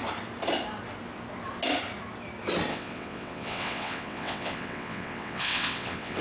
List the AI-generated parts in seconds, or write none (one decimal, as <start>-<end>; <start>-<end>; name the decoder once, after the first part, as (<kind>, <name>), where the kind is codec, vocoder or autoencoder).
2.7-6.2 (vocoder, WaveNeXt)

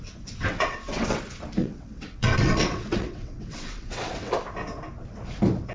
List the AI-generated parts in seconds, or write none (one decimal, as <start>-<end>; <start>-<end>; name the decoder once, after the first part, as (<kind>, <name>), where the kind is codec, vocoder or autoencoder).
0.5-1.2 (vocoder, WaveNeXt); 1.6-4.3

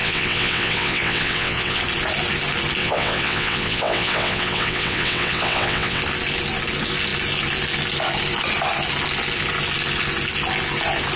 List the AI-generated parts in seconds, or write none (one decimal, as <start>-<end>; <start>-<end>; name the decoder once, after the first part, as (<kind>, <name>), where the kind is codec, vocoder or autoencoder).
0.0-1.8 (vocoder, WaveNeXt); 2.8-6.0

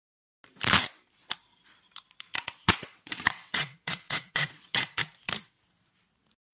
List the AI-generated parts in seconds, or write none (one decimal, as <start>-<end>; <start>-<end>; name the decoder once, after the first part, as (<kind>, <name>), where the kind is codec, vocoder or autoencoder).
2.2-5.0 (vocoder, WaveNeXt)

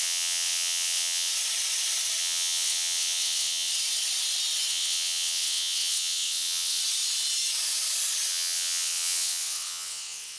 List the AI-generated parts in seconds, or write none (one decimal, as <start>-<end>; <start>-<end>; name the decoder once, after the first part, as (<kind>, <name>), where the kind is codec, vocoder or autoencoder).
0.0-1.3 (vocoder, WaveNeXt); 2.2-3.7; 4.7-6.8; 8.3-10.4

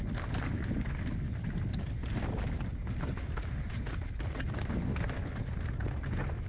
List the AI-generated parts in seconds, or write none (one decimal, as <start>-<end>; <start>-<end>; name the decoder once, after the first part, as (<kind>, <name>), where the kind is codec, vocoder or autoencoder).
none

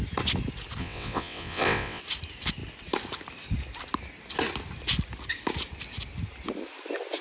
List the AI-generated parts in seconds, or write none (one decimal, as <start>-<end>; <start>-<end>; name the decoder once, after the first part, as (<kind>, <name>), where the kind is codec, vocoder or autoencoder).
0.8-2.0 (vocoder, WaveNeXt)

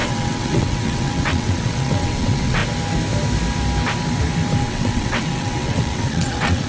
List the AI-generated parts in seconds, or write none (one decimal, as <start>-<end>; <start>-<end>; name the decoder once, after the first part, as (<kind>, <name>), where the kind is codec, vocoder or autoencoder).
0.0-2.6 (vocoder, WaveNeXt); 4.6-6.7